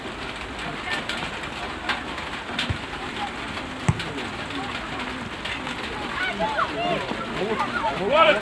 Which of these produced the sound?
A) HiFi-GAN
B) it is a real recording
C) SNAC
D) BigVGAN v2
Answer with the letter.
B